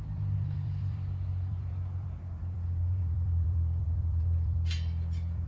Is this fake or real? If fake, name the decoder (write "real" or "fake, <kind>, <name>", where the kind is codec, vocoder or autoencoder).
fake, vocoder, BigVGAN v2